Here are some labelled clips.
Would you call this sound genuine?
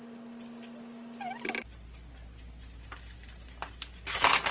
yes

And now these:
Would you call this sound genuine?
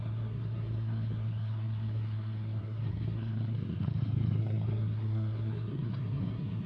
no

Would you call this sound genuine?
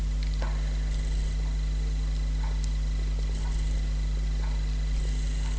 yes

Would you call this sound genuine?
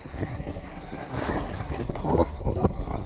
no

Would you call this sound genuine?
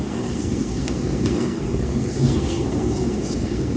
no